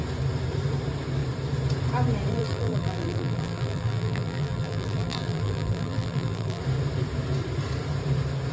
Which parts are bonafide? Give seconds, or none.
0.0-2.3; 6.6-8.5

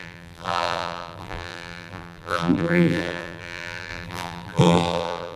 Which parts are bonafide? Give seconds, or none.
none

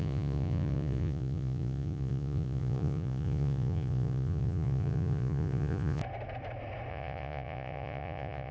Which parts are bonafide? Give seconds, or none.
6.0-6.9

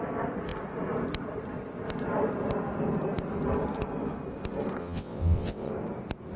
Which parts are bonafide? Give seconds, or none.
0.0-4.8; 5.7-6.4

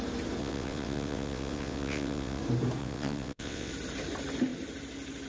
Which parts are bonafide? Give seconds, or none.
0.0-0.4; 2.4-2.8; 3.7-5.3

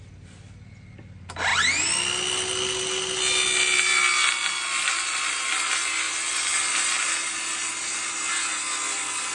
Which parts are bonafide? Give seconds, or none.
0.0-9.3

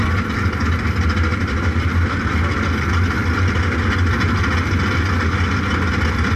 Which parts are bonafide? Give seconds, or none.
0.0-1.3; 2.2-6.4

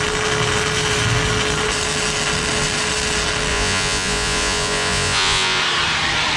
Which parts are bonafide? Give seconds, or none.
0.0-3.5; 5.6-6.4